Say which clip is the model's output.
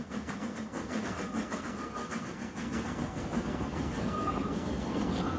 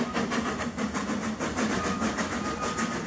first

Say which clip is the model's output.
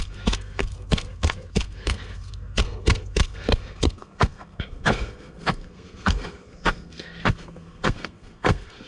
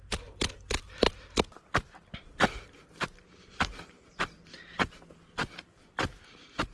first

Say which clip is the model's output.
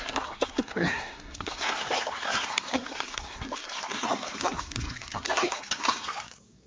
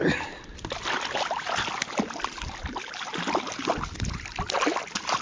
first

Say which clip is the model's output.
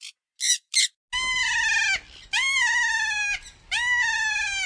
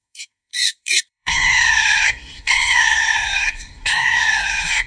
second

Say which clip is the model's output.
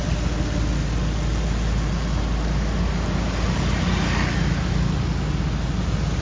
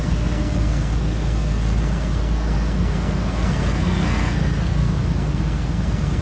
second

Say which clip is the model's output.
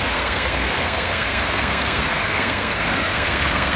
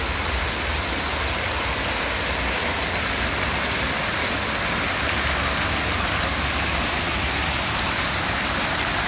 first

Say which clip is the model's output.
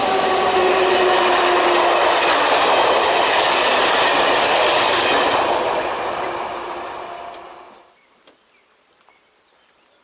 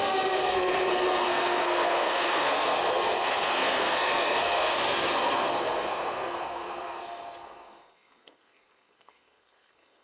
second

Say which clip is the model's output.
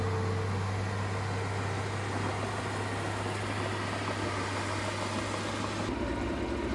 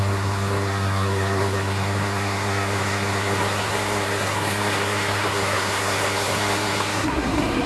second